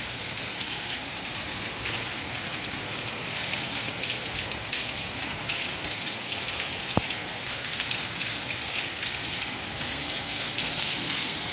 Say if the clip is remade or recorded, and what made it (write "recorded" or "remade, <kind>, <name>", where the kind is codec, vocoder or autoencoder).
remade, codec, SNAC